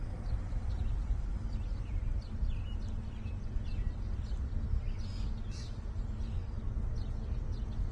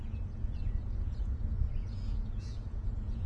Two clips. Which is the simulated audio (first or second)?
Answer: second